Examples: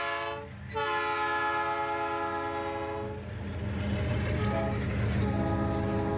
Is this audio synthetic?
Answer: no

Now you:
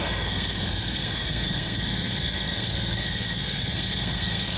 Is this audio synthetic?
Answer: yes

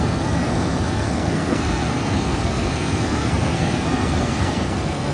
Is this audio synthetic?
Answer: yes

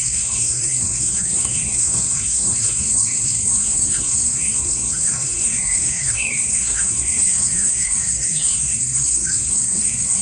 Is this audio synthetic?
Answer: yes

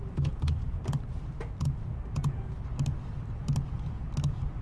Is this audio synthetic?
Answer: no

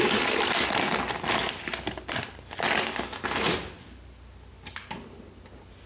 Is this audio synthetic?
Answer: no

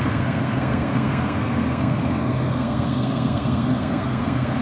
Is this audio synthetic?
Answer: yes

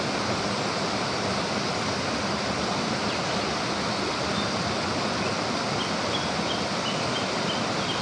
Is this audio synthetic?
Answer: no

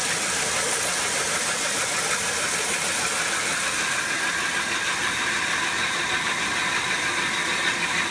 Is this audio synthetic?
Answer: no